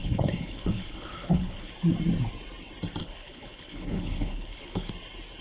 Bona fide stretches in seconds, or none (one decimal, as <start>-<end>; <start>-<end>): 1.7-3.0; 4.9-5.4